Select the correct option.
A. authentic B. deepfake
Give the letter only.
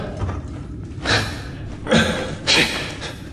A